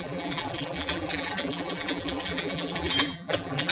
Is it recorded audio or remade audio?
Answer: remade